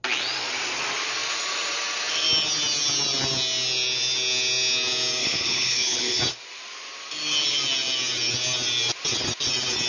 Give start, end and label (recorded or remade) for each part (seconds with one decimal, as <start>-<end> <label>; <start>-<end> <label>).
0.0-5.2 recorded; 5.2-6.2 remade; 6.2-9.9 recorded